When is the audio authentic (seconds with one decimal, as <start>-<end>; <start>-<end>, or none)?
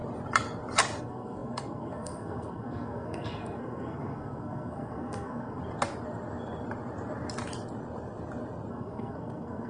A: 0.0-1.0; 5.6-8.7